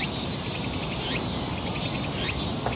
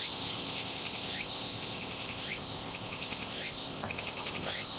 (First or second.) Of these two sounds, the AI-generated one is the second